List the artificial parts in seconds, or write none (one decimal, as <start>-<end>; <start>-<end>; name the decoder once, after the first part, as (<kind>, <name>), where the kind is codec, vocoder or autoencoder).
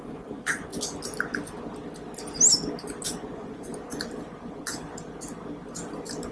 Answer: 0.0-0.7 (vocoder, Vocos); 3.1-3.7